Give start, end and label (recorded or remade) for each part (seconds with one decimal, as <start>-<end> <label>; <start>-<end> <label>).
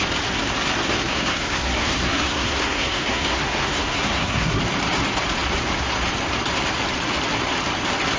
0.0-1.1 recorded; 1.1-4.6 remade; 4.6-8.2 recorded